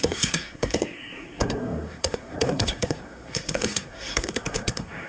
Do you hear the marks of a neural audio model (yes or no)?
yes